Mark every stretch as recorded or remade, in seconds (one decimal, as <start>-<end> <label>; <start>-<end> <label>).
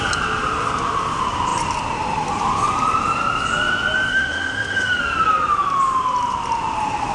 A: 0.0-4.1 recorded; 4.1-5.0 remade; 5.0-7.1 recorded